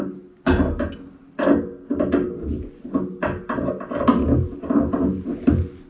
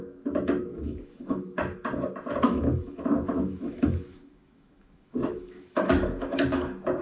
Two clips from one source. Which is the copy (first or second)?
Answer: second